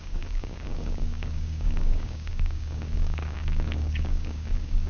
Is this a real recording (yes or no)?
no